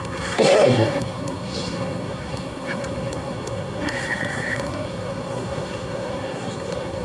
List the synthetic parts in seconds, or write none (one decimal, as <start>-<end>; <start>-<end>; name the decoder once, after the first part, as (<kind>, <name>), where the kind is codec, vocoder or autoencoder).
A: 0.0-7.0 (codec, SNAC)